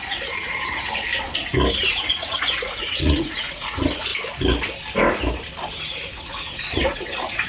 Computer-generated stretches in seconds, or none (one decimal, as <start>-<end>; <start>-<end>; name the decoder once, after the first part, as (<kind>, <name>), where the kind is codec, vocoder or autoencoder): 0.0-1.1 (vocoder, Vocos); 1.9-4.1; 5.7-7.5